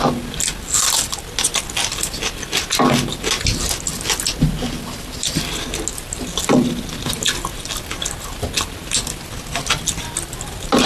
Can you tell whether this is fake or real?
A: real